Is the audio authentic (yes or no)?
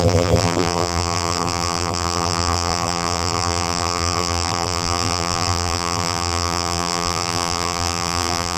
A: no